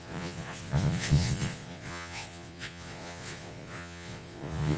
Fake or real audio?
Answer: fake